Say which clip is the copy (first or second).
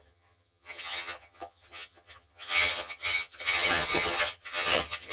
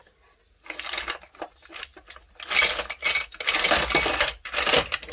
first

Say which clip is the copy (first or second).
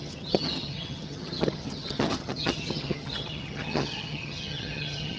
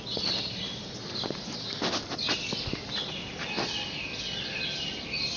first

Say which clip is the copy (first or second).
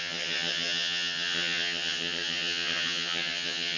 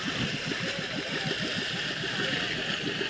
first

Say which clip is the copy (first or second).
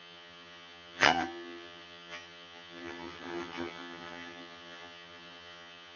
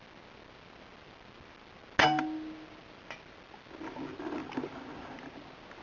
first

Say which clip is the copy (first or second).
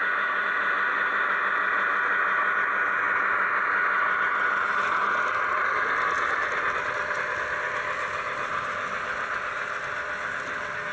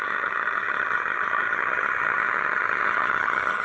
second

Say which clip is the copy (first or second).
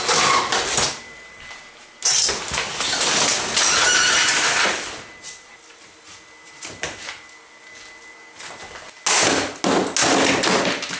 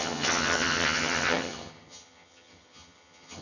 second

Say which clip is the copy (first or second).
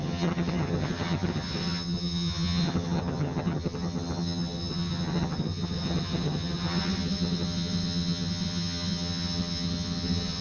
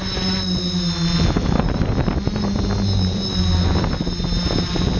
first